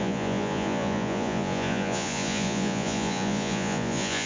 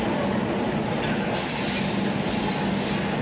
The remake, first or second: first